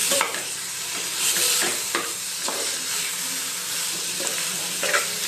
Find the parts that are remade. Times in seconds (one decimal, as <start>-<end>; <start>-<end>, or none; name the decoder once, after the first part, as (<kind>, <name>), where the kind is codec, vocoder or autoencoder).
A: 0.0-5.3 (vocoder, BigVGAN v2)